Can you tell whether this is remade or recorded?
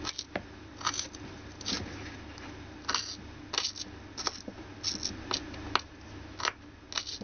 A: recorded